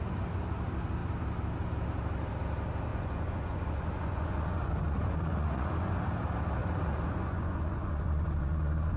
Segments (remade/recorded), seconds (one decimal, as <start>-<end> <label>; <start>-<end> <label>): 0.0-2.9 recorded; 2.9-5.9 remade; 5.9-6.6 recorded; 6.6-9.0 remade